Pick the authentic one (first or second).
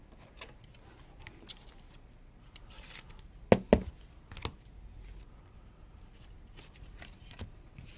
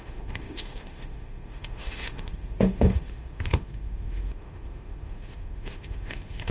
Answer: first